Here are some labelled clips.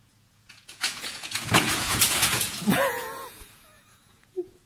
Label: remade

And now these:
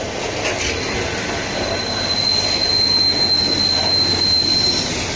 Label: recorded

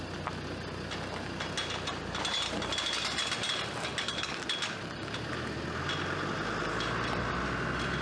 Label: recorded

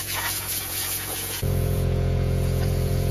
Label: remade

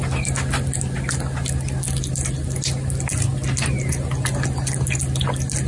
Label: recorded